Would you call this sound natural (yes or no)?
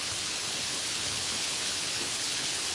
no